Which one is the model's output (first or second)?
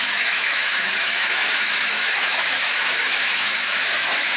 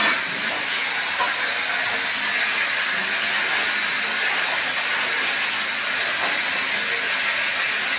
first